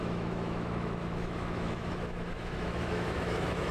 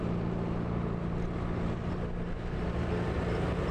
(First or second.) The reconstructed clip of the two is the first